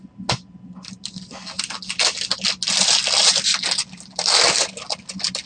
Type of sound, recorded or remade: recorded